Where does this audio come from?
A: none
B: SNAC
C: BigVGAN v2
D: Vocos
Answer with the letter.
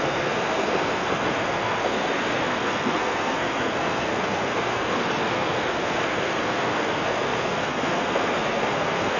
B